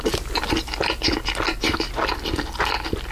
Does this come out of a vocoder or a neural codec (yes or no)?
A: no